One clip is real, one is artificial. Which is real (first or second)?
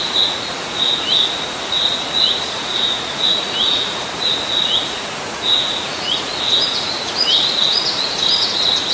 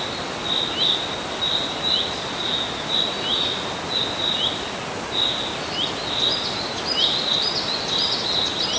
second